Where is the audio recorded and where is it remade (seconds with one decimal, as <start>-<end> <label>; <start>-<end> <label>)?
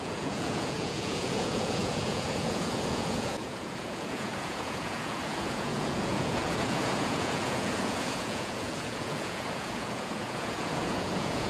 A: 0.0-11.5 remade